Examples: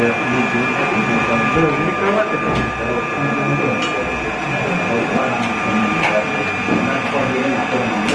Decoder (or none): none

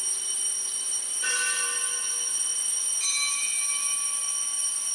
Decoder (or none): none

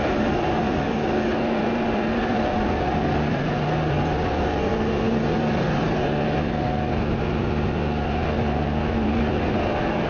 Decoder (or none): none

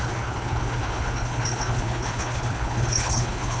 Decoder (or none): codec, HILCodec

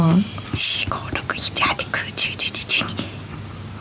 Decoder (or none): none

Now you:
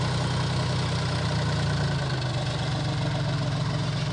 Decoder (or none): none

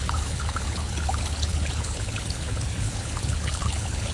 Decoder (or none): codec, HILCodec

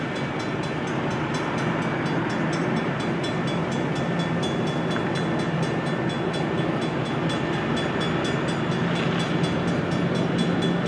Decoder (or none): none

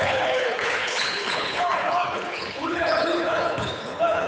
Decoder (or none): codec, HILCodec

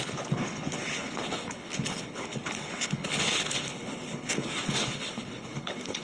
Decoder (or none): codec, HILCodec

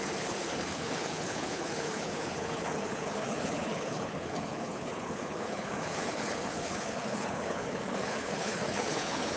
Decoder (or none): codec, HILCodec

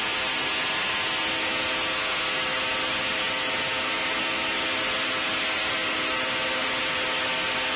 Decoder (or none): none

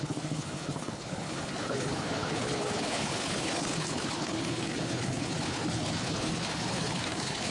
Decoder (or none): codec, HILCodec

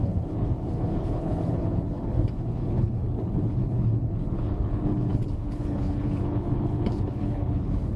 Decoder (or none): codec, HILCodec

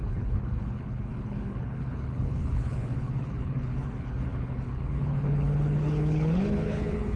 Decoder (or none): codec, HILCodec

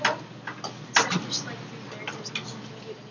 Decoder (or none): none